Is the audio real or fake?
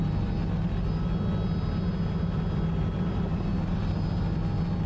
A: real